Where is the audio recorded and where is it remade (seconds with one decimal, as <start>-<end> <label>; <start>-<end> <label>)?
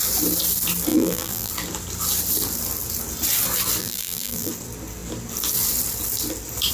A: 0.0-0.9 recorded; 0.9-1.5 remade; 1.5-3.8 recorded; 3.8-4.5 remade; 4.5-6.7 recorded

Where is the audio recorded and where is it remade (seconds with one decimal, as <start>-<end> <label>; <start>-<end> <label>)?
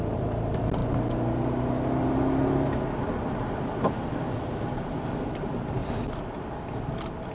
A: 0.0-0.8 remade; 0.8-5.2 recorded; 5.2-5.8 remade; 5.8-7.3 recorded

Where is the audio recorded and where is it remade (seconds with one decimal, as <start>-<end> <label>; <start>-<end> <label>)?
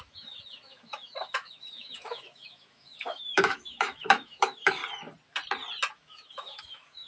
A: 0.0-4.8 remade; 4.8-5.9 recorded; 5.9-7.1 remade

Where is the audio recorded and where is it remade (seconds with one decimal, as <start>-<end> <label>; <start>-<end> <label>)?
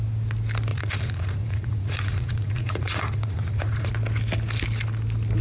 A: 0.0-0.7 recorded; 0.7-3.9 remade; 3.9-5.4 recorded